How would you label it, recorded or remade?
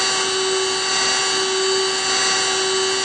recorded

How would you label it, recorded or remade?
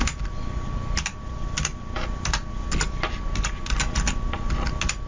recorded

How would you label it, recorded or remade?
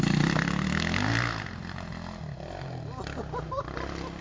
recorded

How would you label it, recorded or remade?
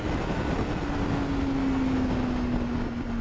recorded